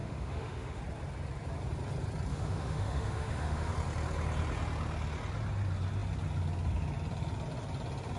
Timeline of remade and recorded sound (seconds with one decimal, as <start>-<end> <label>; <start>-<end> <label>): 0.0-0.8 remade; 0.8-2.3 recorded; 2.3-3.7 remade; 3.7-8.2 recorded